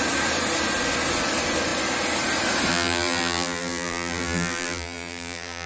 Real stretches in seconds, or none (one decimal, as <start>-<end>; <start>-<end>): 0.0-2.7